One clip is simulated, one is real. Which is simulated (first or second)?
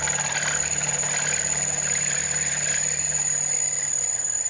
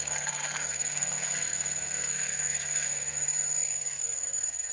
second